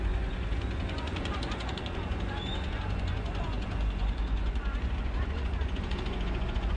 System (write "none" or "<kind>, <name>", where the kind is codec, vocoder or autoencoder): vocoder, Vocos